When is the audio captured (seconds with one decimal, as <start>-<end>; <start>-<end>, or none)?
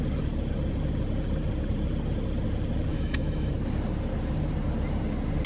0.0-2.9; 3.5-5.5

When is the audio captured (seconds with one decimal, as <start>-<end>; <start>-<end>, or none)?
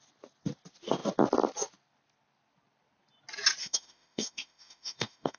0.0-3.6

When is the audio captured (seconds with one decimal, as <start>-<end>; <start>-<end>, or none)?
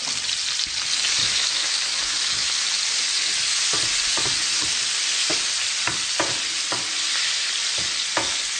0.0-1.2; 2.6-8.6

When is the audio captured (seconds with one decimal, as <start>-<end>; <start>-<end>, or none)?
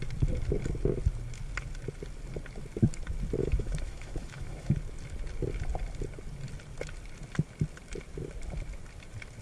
0.0-3.4; 4.7-9.4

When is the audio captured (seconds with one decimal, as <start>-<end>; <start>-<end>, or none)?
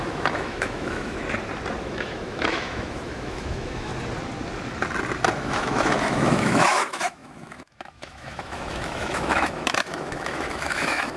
1.2-1.8; 3.9-5.3